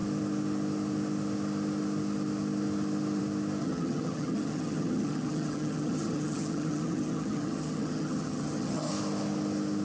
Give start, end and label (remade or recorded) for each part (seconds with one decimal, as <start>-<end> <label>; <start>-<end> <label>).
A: 0.0-3.6 recorded; 3.6-8.9 remade; 8.9-9.8 recorded